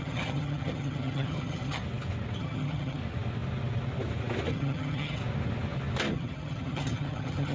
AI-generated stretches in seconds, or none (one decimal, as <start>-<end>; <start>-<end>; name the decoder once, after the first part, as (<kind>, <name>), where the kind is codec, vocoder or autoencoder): 0.0-1.8 (vocoder, HiFi-GAN); 2.4-3.0; 4.5-5.2; 6.1-7.5